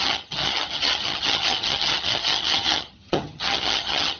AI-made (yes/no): yes